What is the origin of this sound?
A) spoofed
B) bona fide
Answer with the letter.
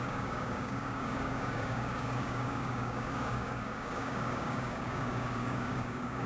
A